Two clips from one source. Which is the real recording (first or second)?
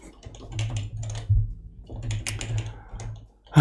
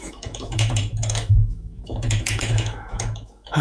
first